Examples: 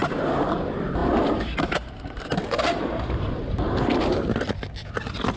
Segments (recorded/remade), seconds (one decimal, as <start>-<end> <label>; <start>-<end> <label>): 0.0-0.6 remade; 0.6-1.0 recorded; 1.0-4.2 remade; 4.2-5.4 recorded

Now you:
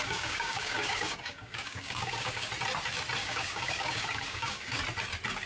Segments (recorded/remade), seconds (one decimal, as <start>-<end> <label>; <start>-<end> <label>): 0.0-2.5 remade; 2.5-3.2 recorded; 3.2-4.8 remade; 4.8-5.5 recorded

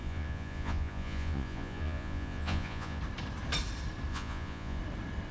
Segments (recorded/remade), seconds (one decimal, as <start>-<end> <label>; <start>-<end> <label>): 0.0-3.0 remade; 3.0-4.1 recorded; 4.1-4.8 remade; 4.8-5.3 recorded

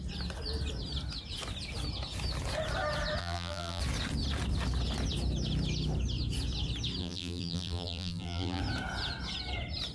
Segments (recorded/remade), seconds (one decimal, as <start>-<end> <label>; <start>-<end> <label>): 0.0-3.2 recorded; 3.2-3.8 remade; 3.8-7.0 recorded; 7.0-8.6 remade; 8.6-9.9 recorded

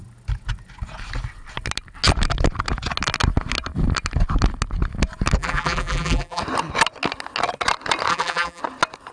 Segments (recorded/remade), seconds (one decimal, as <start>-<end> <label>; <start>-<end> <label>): 0.0-5.4 recorded; 5.4-6.4 remade; 6.4-8.1 recorded; 8.1-8.6 remade; 8.6-9.1 recorded